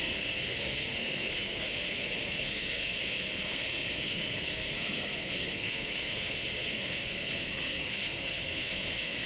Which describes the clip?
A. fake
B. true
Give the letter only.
A